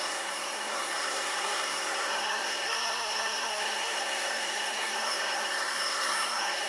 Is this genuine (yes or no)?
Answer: no